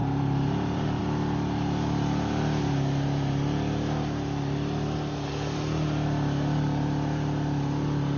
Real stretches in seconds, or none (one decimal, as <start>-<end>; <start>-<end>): 1.0-8.2